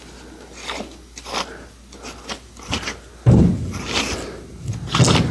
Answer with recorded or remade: recorded